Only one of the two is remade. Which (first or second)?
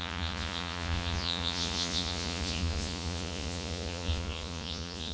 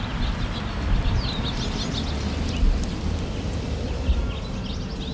first